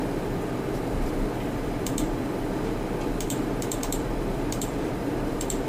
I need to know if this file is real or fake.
fake